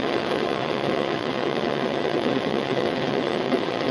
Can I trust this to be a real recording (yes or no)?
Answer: no